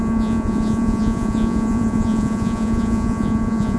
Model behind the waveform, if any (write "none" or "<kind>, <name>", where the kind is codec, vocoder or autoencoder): vocoder, Vocos